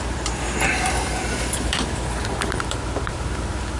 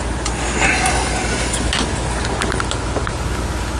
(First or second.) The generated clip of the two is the first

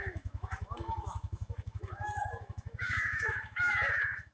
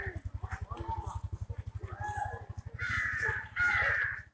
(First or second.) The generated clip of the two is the first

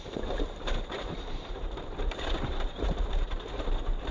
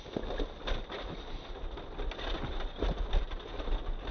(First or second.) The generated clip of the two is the first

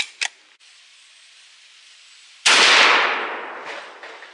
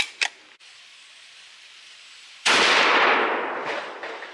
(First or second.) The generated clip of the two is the second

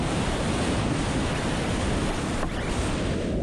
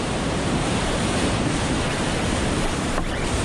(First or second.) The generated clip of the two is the second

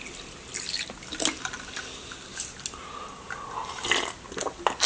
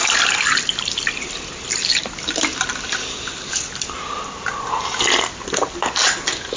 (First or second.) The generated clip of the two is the second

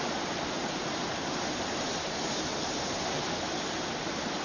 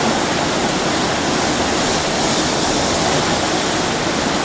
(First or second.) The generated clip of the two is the first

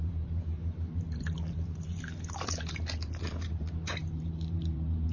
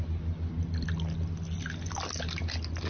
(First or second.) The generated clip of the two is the first